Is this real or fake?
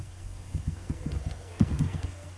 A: fake